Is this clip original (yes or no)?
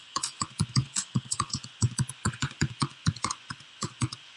no